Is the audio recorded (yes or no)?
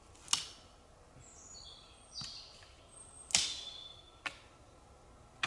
yes